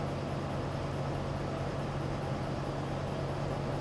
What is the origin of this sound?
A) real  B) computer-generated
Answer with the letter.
A